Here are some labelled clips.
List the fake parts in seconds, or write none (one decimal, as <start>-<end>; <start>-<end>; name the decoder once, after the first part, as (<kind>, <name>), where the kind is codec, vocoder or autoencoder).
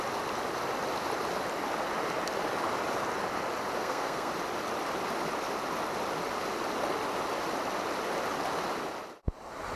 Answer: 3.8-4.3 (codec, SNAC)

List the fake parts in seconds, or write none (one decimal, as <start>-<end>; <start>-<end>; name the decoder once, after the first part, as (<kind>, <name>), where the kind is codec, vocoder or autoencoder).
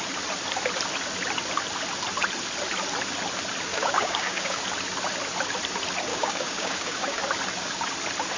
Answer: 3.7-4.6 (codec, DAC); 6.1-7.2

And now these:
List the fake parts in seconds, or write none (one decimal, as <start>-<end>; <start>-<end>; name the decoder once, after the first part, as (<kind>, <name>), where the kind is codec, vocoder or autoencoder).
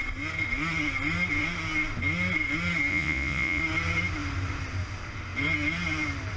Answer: 2.9-3.6 (vocoder, Vocos)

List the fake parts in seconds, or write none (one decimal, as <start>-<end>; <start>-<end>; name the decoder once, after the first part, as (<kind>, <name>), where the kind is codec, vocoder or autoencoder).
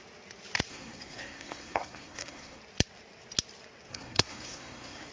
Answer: 0.7-2.6 (codec, SNAC); 3.9-5.1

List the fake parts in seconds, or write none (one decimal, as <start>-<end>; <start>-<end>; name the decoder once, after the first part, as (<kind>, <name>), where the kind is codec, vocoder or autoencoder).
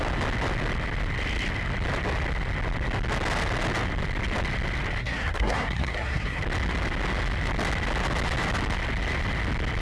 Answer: 5.0-6.4 (codec, SNAC)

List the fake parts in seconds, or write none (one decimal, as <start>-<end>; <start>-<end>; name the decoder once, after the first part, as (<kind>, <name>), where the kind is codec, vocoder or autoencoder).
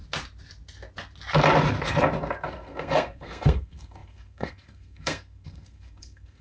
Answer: 2.5-6.4 (codec, SNAC)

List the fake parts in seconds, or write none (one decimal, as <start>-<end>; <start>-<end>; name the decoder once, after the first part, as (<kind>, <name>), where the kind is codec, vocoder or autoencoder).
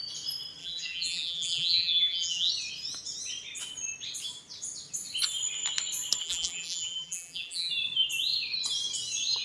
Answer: 0.6-2.5 (vocoder, BigVGAN v2); 6.2-7.7